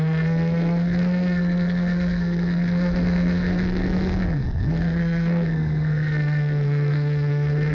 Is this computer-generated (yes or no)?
yes